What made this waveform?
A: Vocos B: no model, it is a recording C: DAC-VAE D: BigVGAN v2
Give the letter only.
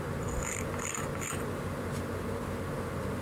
B